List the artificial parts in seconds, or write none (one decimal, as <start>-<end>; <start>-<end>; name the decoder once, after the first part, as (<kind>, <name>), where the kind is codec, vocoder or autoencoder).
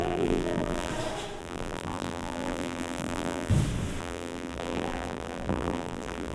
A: 0.0-0.9 (vocoder, BigVGAN v2); 1.4-3.5; 4.0-6.3